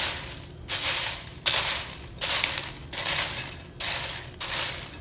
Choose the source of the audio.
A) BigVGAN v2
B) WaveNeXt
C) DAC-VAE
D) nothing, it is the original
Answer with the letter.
D